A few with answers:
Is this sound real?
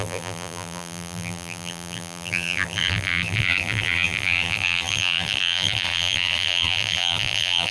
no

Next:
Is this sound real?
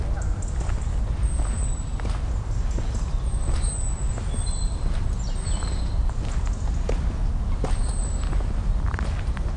yes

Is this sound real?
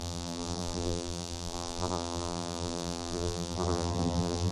no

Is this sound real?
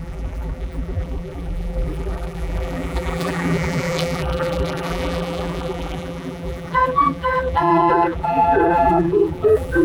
no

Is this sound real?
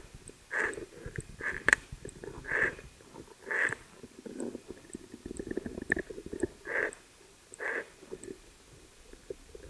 yes